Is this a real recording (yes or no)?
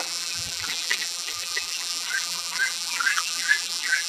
no